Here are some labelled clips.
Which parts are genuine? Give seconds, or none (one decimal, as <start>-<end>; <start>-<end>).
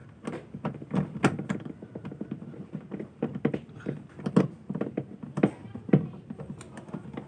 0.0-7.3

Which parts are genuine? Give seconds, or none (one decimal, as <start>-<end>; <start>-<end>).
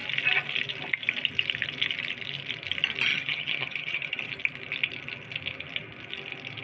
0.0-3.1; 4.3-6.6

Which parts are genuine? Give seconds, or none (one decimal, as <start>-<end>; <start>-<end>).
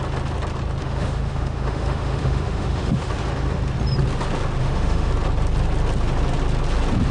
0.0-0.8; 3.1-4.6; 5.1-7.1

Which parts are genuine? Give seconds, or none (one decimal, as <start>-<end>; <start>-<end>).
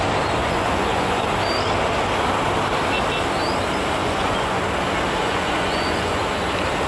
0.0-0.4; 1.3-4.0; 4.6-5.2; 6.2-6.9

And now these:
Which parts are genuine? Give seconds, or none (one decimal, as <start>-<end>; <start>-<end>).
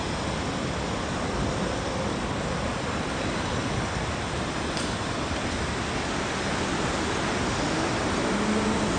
0.0-2.7; 5.5-9.0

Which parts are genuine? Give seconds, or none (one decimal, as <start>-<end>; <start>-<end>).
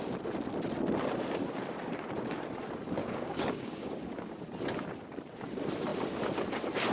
0.0-3.0; 4.2-6.9